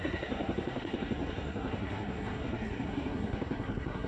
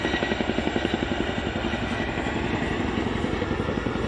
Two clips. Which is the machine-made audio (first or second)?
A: first